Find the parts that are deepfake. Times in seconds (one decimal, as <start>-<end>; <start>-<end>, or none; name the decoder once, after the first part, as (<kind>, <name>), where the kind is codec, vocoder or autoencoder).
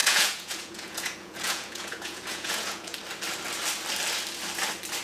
0.0-3.0 (vocoder, Vocos)